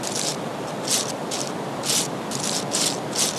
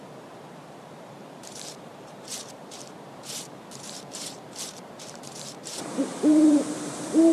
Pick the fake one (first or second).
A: second